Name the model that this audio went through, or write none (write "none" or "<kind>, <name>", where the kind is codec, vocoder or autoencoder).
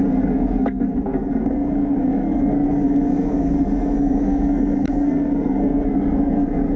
codec, SNAC